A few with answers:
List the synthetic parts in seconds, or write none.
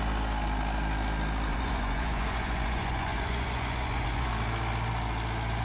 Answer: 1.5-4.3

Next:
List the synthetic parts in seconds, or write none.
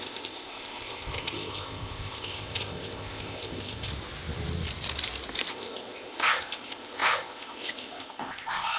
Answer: 0.0-3.9; 5.5-8.8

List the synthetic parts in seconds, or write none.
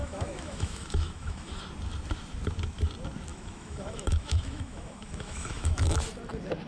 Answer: 0.0-1.6; 3.3-6.0